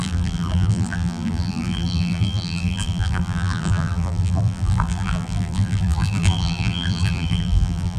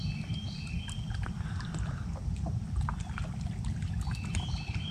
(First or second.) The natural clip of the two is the second